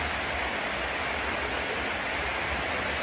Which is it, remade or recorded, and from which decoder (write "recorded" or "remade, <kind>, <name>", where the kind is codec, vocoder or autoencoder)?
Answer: recorded